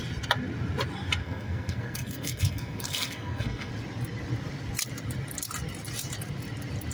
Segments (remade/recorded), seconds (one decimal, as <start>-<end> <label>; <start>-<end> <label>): 0.0-1.2 recorded; 1.2-3.7 remade; 3.7-6.9 recorded